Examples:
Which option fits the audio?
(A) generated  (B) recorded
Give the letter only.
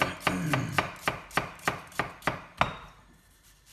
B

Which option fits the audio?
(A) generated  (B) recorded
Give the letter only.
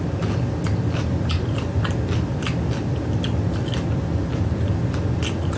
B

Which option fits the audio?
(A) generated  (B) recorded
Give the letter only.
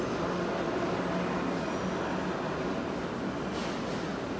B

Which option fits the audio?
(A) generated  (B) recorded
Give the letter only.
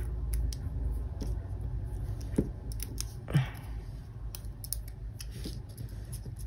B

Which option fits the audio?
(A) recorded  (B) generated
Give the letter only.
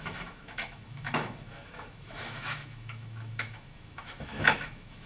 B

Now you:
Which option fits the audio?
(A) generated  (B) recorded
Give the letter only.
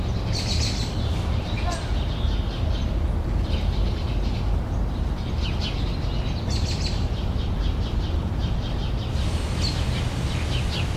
B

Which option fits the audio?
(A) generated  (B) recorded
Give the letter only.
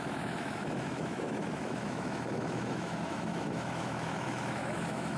A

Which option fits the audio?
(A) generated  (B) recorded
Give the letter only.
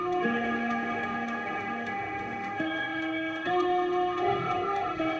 A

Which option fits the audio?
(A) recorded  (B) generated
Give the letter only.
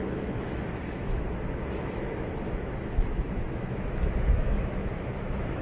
B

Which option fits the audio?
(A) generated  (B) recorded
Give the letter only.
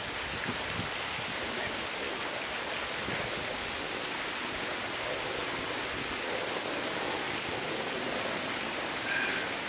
B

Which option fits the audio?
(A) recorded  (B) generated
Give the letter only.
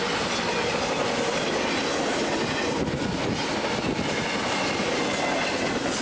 A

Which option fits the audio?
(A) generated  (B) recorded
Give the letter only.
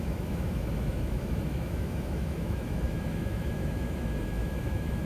A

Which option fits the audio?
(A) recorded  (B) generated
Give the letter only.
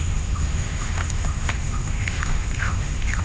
B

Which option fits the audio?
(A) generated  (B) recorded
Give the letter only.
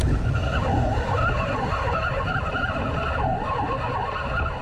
B